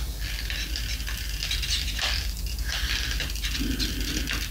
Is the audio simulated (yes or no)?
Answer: no